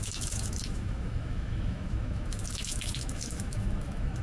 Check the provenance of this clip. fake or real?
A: fake